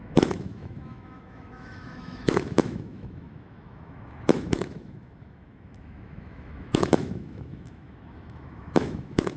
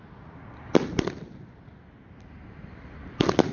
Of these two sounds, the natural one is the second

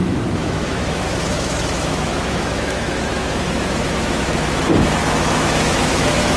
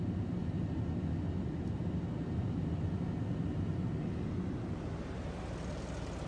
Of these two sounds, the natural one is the second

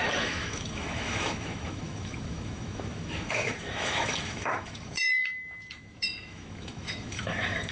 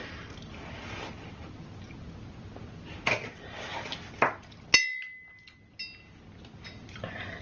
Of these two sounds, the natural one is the second